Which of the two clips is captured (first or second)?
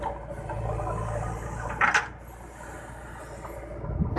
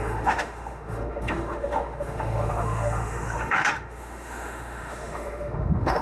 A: first